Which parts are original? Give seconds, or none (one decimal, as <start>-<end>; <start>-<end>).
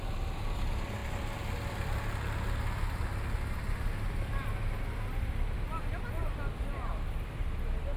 0.0-8.0